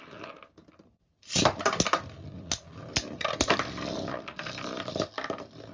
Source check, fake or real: real